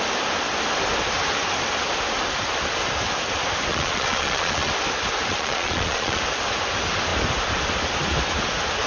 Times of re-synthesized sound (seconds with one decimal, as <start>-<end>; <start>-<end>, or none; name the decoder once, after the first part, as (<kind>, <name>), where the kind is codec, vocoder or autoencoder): 3.7-4.7 (vocoder, Vocos); 5.3-6.2